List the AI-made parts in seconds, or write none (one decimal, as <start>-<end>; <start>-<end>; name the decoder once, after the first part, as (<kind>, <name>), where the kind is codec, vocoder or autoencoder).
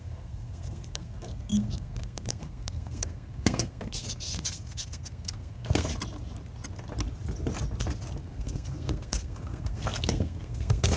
0.0-5.9 (codec, SNAC); 8.2-11.0